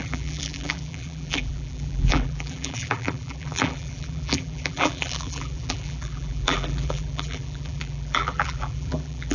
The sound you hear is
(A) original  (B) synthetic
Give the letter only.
B